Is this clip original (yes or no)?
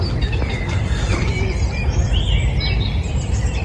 yes